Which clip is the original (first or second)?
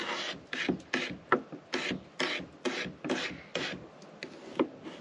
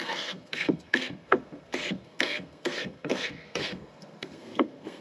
first